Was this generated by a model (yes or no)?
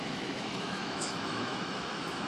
yes